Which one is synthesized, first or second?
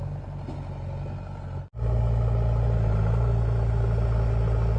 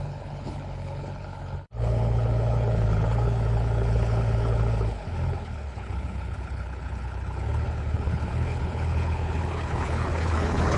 second